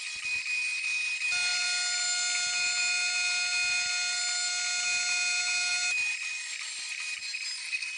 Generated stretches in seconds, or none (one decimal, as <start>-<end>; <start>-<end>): none